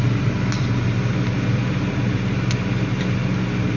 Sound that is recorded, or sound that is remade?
recorded